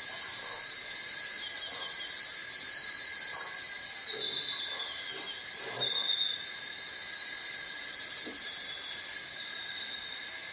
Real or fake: real